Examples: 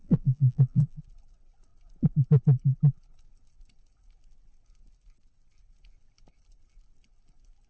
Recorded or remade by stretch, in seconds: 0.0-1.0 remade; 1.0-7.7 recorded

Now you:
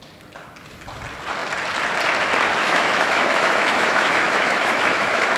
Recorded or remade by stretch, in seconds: 0.0-2.6 recorded; 2.6-5.4 remade

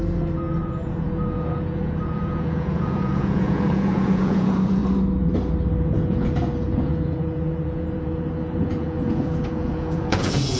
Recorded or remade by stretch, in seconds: 0.0-4.8 remade; 4.8-5.8 recorded; 5.8-10.6 remade